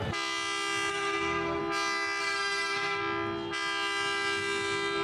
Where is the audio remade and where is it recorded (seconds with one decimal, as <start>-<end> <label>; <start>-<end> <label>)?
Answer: 0.0-0.9 recorded; 0.9-1.6 remade; 1.6-2.2 recorded; 2.2-3.0 remade; 3.0-5.0 recorded